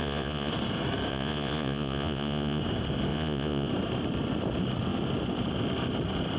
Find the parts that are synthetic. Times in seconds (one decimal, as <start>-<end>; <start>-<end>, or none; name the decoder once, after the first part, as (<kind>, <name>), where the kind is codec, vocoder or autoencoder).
0.0-0.5 (vocoder, Vocos); 1.1-2.6; 3.1-3.7